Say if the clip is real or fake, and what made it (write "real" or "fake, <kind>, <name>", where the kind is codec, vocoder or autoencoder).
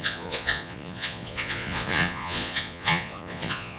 fake, vocoder, Vocos